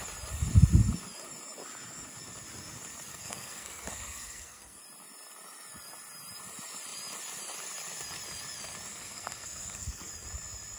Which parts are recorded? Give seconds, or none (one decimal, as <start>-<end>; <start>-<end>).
0.0-3.1; 4.8-8.9; 10.1-10.8